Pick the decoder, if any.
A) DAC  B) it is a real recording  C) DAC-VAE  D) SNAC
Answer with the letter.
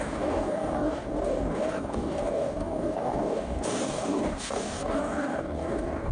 A